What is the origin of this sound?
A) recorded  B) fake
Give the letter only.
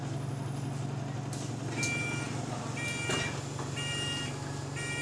A